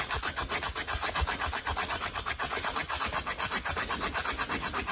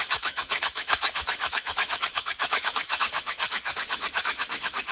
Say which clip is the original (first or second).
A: first